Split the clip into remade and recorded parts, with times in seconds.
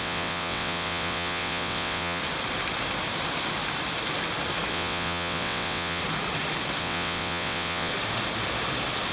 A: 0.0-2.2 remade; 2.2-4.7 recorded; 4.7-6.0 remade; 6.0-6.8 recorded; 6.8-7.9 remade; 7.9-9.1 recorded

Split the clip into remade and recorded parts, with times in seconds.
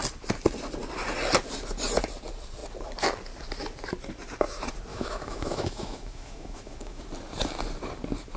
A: 0.0-4.9 recorded; 4.9-7.0 remade; 7.0-8.4 recorded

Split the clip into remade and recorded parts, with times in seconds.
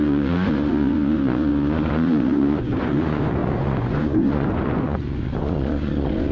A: 0.0-6.3 remade